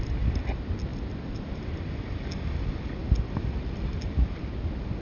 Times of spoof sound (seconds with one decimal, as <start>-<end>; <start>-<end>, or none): none